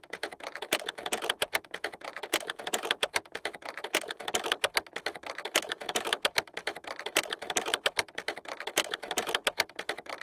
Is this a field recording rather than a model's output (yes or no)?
no